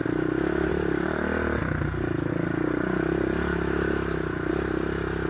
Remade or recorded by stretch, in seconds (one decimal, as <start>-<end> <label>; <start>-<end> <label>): 0.0-0.7 remade; 0.7-3.5 recorded; 3.5-4.5 remade; 4.5-5.3 recorded